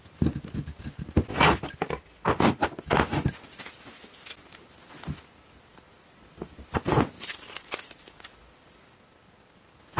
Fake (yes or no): no